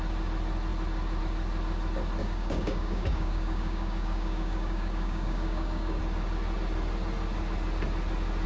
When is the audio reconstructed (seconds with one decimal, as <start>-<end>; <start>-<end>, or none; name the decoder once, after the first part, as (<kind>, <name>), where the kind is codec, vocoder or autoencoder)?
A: 2.2-6.0 (codec, DAC)